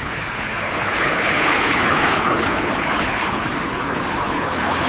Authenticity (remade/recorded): remade